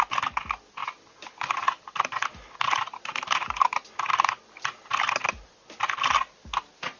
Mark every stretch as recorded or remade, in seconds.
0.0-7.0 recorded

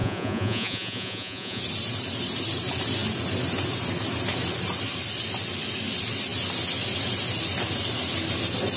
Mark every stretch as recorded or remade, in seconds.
0.0-1.6 remade; 1.6-8.8 recorded